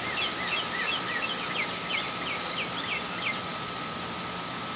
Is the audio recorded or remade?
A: recorded